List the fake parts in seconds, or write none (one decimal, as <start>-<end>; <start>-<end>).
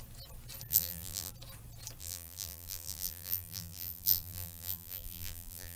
0.7-1.3; 2.0-5.8